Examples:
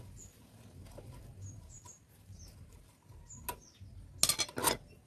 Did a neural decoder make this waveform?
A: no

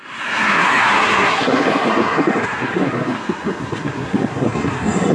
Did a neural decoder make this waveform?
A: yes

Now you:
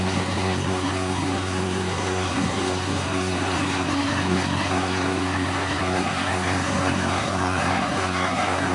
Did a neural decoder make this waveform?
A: yes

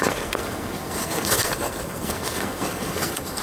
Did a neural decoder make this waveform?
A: yes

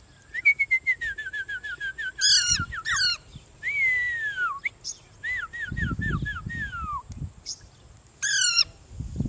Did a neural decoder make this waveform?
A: no